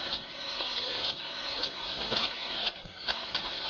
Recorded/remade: remade